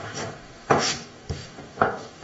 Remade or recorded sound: remade